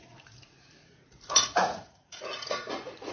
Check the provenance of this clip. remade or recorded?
remade